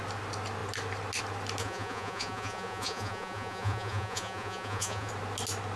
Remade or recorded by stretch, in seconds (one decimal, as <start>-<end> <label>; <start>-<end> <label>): 0.0-1.6 recorded; 1.6-5.1 remade; 5.1-5.8 recorded